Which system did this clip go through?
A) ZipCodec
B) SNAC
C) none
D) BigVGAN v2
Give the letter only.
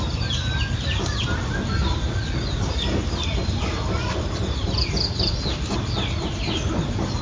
C